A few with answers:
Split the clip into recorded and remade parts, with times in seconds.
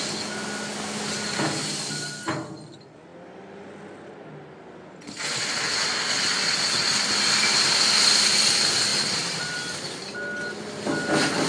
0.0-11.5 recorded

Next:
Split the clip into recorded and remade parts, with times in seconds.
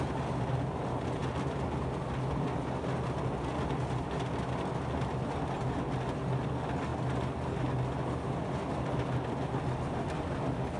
0.0-10.8 recorded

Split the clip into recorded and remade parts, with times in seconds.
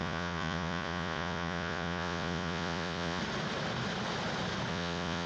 0.0-3.2 remade; 3.2-4.7 recorded; 4.7-5.3 remade